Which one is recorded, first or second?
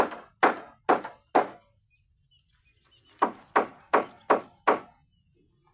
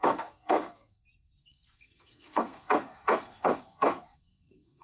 first